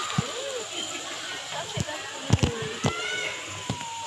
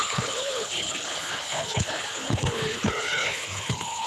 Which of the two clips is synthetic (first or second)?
second